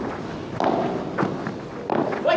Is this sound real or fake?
real